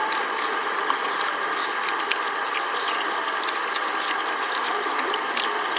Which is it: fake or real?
real